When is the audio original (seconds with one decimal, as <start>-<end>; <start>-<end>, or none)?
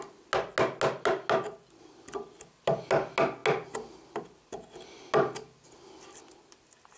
0.0-7.0